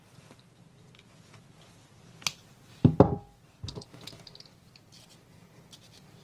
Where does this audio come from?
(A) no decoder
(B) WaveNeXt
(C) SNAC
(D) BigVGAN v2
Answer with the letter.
A